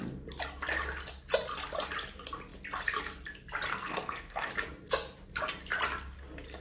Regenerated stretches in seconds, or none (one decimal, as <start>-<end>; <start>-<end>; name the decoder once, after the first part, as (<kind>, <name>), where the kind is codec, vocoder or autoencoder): 3.7-4.5 (codec, SNAC)